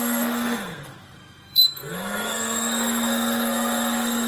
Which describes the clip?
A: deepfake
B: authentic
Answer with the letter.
A